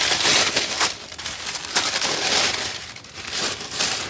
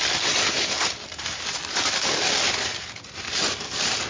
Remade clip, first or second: first